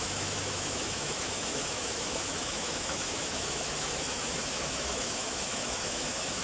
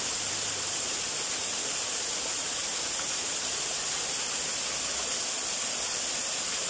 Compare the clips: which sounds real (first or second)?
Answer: second